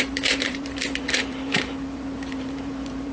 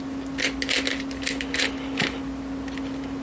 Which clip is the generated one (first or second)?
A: first